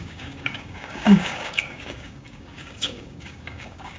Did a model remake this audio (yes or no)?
yes